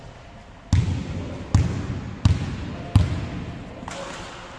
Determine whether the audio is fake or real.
real